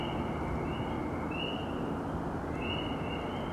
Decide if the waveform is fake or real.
real